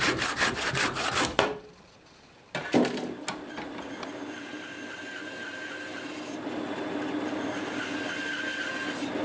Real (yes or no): yes